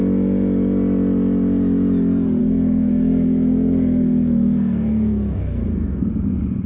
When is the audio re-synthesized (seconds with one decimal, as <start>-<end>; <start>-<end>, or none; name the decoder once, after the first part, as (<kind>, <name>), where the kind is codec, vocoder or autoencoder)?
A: 2.4-6.1 (codec, SNAC)